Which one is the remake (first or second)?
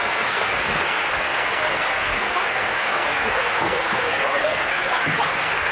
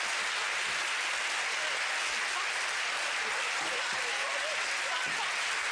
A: first